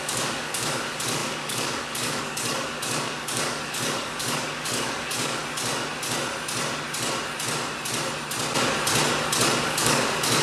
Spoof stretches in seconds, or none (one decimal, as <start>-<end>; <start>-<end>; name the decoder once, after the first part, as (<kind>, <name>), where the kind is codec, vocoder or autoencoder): 0.0-5.4 (codec, DAC); 9.6-10.4